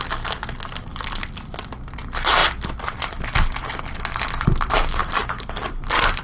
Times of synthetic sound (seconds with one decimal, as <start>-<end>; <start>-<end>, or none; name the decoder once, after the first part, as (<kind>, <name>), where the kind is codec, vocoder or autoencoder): 0.9-1.7 (vocoder, BigVGAN v2)